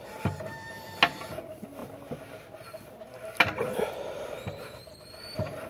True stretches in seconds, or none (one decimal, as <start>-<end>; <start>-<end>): 0.0-5.7